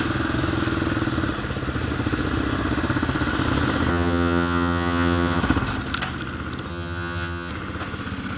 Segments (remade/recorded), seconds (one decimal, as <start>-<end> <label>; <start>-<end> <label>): 0.0-3.9 recorded; 3.9-5.4 remade; 5.4-6.7 recorded; 6.7-7.5 remade; 7.5-8.4 recorded